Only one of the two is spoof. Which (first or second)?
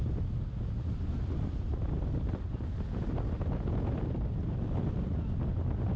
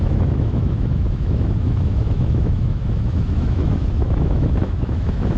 second